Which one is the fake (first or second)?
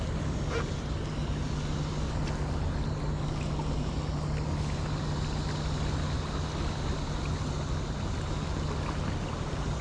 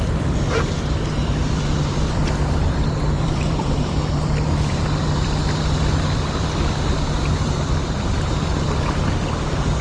second